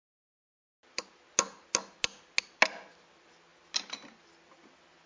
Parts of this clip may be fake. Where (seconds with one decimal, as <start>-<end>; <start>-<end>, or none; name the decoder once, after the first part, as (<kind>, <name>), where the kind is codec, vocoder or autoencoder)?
none